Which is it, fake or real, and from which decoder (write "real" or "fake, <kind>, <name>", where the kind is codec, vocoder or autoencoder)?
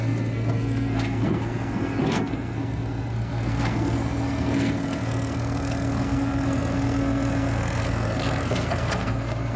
fake, codec, SNAC